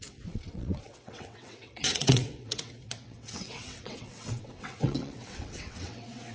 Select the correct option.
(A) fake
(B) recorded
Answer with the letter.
A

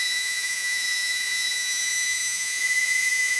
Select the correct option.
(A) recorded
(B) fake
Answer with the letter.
B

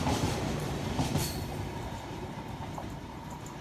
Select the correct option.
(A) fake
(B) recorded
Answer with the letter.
A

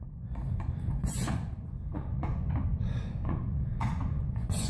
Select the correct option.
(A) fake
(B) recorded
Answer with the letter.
A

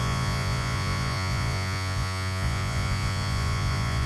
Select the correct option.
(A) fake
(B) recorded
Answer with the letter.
A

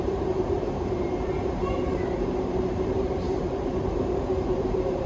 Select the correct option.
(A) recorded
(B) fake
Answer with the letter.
B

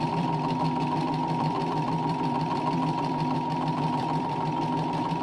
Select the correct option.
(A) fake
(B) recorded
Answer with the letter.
A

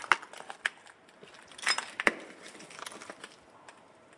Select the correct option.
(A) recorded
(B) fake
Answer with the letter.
A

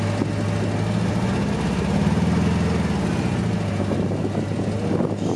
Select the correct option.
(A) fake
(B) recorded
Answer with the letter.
B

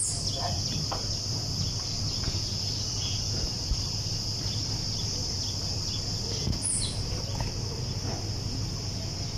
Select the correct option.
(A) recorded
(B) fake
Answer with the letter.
A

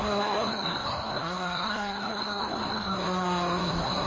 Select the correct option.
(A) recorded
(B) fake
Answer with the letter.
B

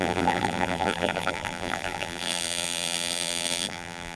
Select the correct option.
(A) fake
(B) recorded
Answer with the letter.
A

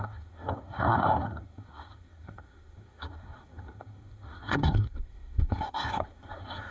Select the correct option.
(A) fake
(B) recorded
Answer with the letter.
A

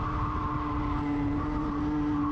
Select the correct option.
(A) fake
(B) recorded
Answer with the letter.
B